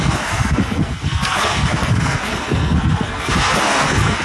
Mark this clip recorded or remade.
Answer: remade